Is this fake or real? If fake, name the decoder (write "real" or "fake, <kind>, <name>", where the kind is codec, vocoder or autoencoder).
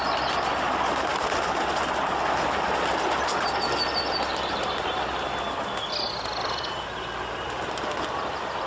real